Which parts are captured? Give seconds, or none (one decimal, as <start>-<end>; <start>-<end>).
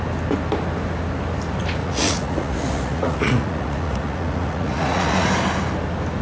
0.0-1.8; 5.3-6.2